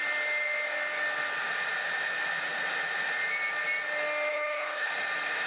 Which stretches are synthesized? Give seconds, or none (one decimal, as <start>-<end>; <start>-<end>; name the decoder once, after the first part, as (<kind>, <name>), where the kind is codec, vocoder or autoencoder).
4.3-4.9 (codec, HILCodec)